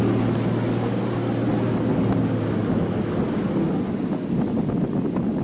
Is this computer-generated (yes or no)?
no